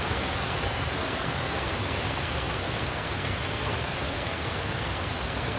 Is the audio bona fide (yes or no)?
no